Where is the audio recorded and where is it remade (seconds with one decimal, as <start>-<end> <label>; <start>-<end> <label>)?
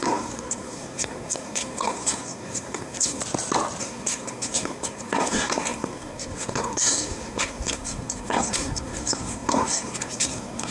0.0-3.2 remade; 3.2-3.8 recorded; 3.8-10.7 remade